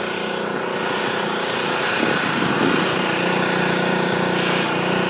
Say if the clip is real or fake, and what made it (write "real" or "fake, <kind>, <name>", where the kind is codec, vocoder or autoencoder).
real